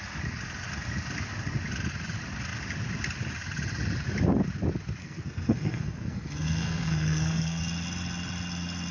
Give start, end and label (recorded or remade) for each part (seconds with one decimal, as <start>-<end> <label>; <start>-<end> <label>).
0.0-5.0 recorded; 5.0-7.6 remade; 7.6-8.9 recorded